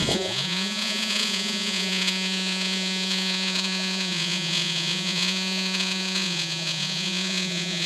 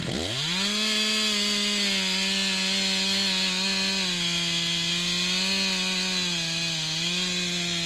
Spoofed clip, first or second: first